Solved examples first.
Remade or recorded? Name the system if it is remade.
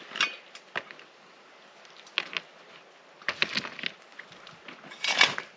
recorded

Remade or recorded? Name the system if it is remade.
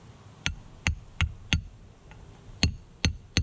recorded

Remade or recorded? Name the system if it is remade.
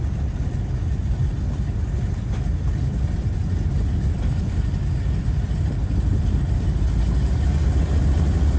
recorded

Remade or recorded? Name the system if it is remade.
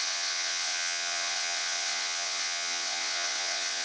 remade, vocoder, WaveNeXt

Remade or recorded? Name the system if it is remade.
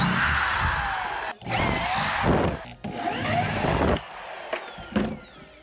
recorded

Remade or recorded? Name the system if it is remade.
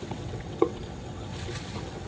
remade, vocoder, WaveNeXt